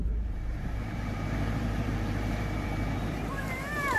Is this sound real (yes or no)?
no